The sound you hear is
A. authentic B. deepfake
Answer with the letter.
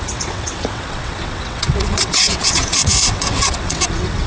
B